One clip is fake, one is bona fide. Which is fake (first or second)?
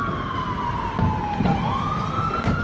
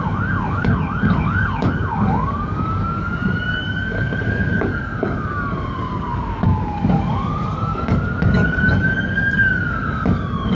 second